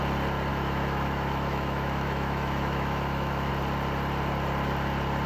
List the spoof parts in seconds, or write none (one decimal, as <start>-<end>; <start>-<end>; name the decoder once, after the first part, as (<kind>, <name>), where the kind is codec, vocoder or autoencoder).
0.5-3.5 (autoencoder, DAC-VAE)